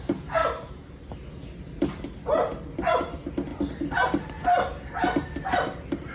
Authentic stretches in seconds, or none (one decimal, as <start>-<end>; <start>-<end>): 0.0-6.1